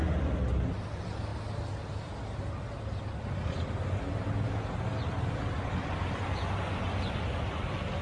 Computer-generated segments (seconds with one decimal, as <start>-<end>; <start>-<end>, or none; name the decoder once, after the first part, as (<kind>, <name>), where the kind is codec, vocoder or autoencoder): none